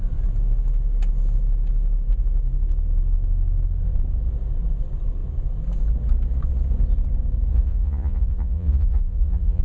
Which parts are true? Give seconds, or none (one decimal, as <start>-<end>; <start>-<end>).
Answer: 0.0-7.5